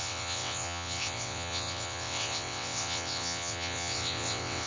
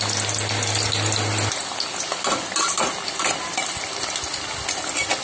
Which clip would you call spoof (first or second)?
first